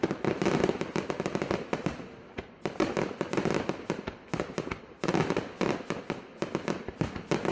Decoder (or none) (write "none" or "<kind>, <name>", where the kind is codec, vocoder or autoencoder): none